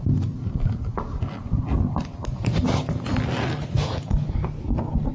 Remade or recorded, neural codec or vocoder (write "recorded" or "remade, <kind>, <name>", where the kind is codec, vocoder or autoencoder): recorded